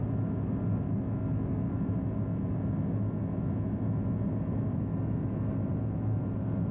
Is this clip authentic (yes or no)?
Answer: yes